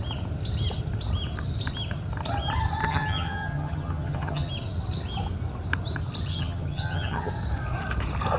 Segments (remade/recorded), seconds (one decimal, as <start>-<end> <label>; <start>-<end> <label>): 0.0-2.8 recorded; 2.8-4.5 remade; 4.5-6.3 recorded; 6.3-7.3 remade; 7.3-8.4 recorded